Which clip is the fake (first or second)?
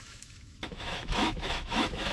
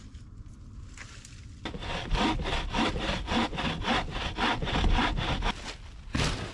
first